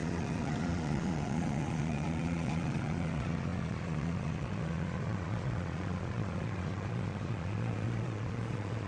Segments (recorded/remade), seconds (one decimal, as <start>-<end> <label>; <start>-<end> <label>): 0.0-8.9 remade